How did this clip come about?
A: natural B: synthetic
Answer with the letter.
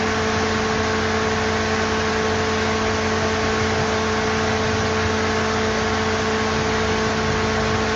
A